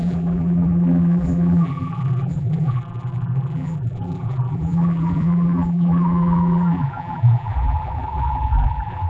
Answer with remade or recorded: remade